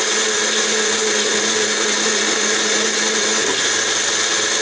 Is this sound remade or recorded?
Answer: recorded